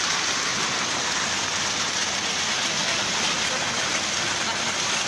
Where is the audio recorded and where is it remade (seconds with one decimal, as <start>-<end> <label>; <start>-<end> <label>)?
0.0-5.1 recorded